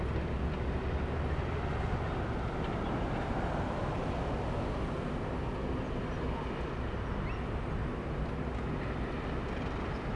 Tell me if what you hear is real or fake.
real